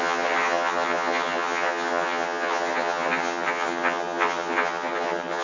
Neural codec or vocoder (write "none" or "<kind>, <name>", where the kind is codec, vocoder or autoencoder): vocoder, HiFi-GAN